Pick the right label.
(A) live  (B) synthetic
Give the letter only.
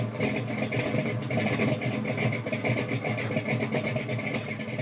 A